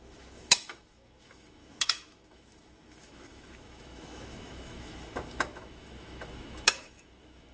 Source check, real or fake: fake